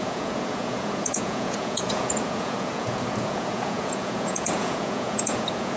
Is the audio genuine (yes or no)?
no